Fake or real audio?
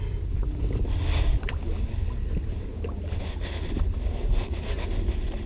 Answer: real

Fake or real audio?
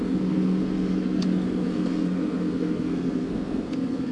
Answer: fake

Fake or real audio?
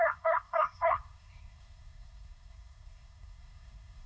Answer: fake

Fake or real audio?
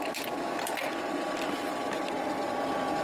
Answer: real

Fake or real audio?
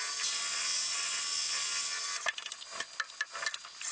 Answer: real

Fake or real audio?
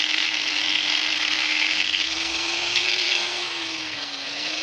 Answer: fake